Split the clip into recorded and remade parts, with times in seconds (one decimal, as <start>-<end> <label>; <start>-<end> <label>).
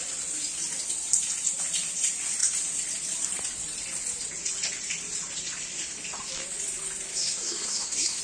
0.0-7.1 recorded; 7.1-8.2 remade